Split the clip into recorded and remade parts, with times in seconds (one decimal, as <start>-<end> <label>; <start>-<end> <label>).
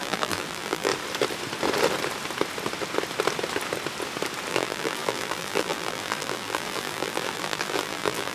0.0-0.9 remade; 0.9-4.5 recorded; 4.5-8.3 remade